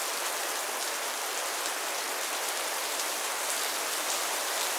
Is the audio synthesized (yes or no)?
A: no